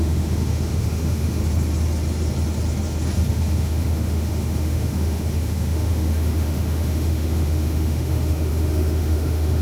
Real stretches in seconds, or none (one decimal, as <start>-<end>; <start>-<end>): 1.4-3.3